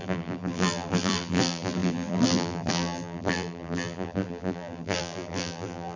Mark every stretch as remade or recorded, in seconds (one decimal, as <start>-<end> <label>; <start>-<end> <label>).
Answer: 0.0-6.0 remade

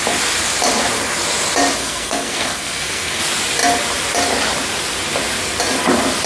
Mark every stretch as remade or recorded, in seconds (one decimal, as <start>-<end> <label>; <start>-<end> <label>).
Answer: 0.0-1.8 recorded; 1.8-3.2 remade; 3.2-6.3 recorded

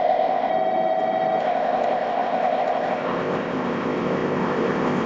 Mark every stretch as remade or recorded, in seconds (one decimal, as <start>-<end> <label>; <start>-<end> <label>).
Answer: 0.0-0.5 remade; 0.5-1.4 recorded; 1.4-5.1 remade

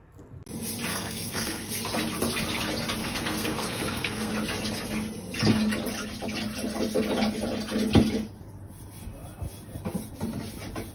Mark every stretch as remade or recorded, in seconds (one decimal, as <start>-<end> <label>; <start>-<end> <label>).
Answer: 0.0-0.9 recorded; 0.9-1.7 remade; 1.7-3.0 recorded; 3.0-4.3 remade; 4.3-10.9 recorded